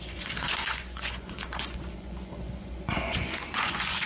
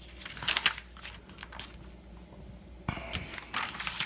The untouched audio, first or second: second